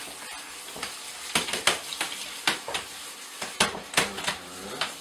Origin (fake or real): real